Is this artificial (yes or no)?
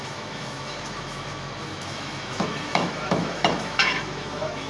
yes